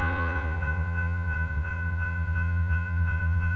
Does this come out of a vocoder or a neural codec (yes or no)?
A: yes